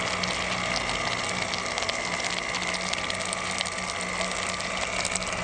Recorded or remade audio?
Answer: recorded